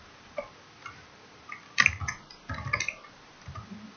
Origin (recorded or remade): recorded